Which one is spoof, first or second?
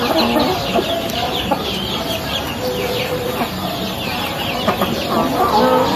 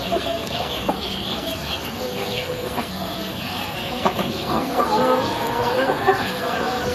second